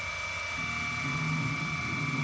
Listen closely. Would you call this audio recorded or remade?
recorded